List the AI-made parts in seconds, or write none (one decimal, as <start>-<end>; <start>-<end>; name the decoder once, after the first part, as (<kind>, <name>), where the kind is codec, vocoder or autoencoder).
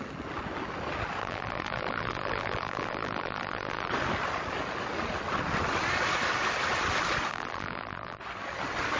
1.2-3.9 (vocoder, BigVGAN v2); 7.3-8.2